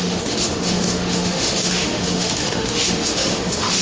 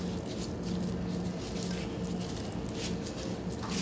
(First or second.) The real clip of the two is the second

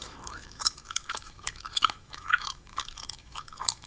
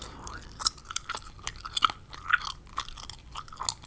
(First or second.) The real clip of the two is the second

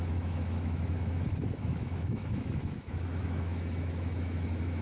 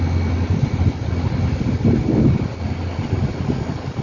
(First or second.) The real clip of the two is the second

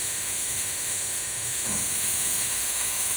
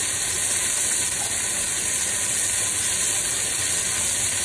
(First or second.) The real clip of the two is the second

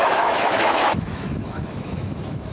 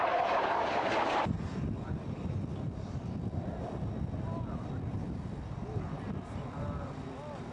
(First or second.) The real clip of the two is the second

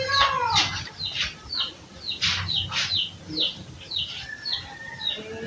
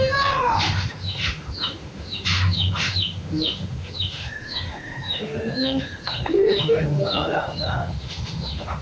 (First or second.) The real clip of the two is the first